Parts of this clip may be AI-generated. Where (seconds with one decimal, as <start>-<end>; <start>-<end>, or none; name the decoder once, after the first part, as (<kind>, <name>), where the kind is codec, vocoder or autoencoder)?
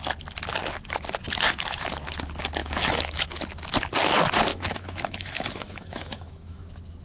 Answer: 2.6-3.2 (autoencoder, DAC-VAE); 4.5-6.6